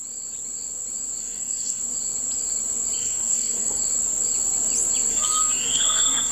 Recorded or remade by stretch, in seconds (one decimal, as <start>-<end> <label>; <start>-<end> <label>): 0.0-1.2 recorded; 1.2-1.8 remade; 1.8-3.0 recorded; 3.0-3.8 remade; 3.8-5.1 recorded; 5.1-6.3 remade